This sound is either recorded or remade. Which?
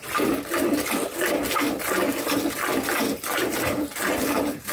remade